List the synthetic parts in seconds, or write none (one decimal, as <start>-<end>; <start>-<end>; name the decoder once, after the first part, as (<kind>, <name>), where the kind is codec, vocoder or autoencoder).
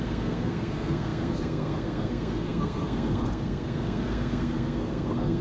0.0-5.4 (codec, SNAC)